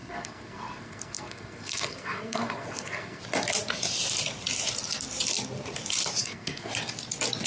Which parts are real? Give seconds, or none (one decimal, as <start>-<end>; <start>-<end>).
3.2-6.2; 6.7-7.5